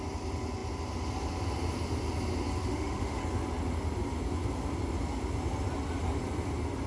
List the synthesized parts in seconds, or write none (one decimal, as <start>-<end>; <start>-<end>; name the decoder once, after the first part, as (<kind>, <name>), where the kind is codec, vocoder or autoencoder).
2.6-3.2 (autoencoder, DAC-VAE)